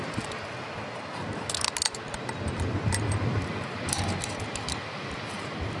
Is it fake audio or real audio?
real